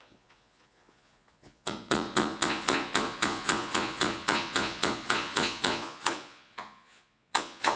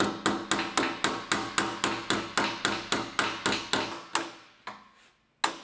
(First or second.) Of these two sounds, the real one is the second